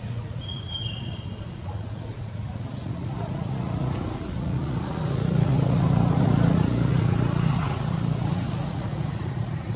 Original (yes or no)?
no